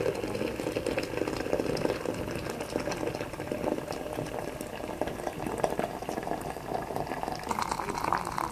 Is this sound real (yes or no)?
yes